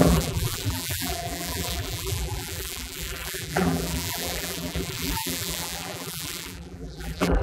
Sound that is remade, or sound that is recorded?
remade